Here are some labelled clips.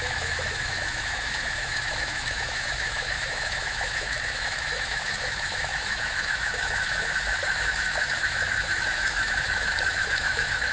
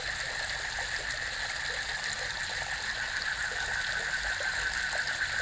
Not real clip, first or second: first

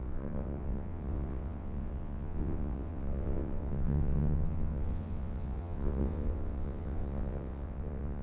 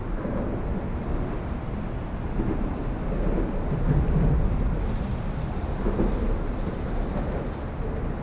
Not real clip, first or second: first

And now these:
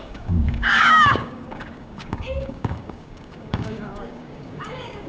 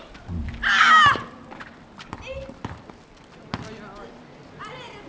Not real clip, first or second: first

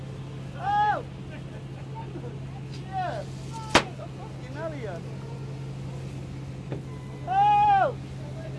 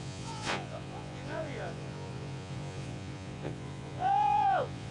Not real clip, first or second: second